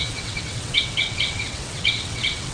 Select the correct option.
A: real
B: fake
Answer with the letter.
B